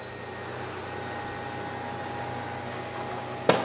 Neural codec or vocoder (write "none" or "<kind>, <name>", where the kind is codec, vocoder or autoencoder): none